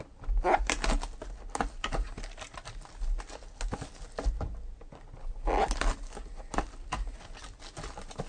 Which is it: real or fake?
real